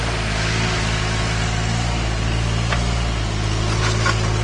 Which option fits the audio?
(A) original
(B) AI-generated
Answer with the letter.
A